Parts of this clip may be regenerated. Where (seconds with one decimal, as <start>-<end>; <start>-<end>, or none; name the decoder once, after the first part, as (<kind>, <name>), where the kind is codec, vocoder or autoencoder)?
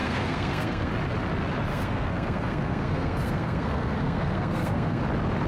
0.0-0.9 (codec, SNAC); 1.7-5.0